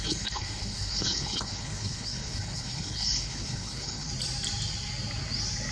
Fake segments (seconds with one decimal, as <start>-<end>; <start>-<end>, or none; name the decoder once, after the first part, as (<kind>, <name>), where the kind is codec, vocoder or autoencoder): 0.0-4.1 (codec, HILCodec)

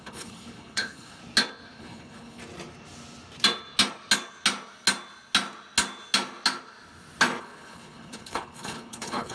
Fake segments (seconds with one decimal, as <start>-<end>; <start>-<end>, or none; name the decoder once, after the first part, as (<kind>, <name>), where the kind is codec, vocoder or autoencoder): 0.0-1.2 (codec, HILCodec); 1.8-2.4; 7.4-9.3

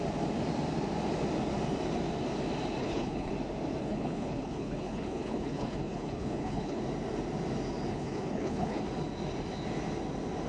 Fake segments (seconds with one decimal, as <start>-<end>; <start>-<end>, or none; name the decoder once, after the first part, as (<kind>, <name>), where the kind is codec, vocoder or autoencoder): 2.8-3.3 (codec, HILCodec); 3.8-6.8; 7.9-8.8